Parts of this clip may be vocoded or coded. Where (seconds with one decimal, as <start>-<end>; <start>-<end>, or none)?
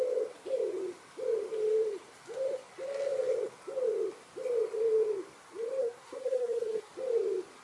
5.8-6.9